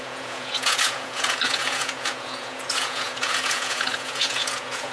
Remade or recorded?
remade